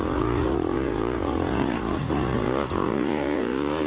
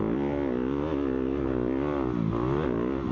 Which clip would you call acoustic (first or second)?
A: second